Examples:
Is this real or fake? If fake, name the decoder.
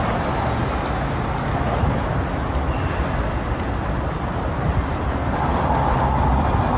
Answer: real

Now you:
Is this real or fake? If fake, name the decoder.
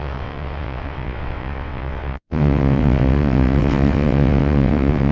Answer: fake, vocoder, WaveNeXt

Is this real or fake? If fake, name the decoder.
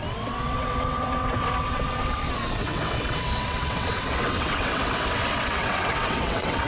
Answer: fake, vocoder, WaveNeXt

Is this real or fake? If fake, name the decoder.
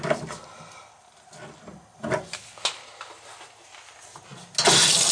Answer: real